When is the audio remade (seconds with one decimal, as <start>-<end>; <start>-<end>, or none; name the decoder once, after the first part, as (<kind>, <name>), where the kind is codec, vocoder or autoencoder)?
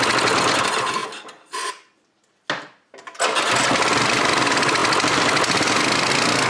none